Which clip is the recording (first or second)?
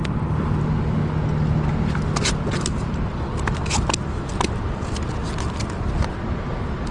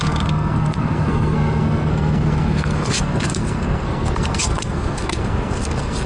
first